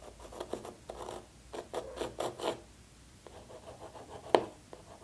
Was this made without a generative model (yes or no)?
yes